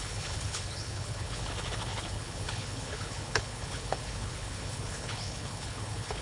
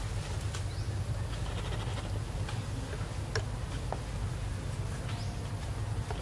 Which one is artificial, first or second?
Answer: first